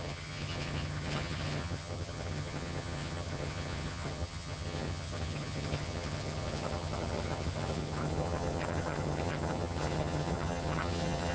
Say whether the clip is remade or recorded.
remade